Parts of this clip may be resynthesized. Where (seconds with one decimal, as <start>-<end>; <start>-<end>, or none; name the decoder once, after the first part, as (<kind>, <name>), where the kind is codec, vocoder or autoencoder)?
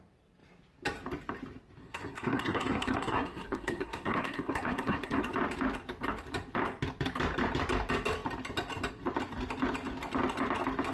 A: 1.8-5.2 (codec, SNAC)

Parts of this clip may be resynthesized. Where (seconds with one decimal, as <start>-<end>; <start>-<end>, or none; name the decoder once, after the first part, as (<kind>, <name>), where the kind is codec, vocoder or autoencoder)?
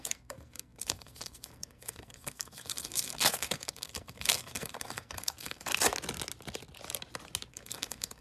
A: 0.0-5.7 (codec, SNAC); 7.5-8.2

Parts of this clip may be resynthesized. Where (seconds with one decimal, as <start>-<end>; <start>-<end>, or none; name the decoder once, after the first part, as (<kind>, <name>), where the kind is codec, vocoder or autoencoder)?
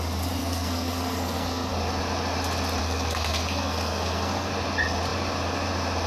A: 0.4-1.7 (codec, SNAC); 2.8-4.5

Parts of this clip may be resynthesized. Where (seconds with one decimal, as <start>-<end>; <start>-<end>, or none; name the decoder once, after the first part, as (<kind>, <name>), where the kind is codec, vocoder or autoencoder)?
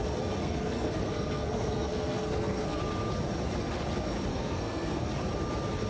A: 0.4-2.8 (codec, SNAC); 4.3-5.1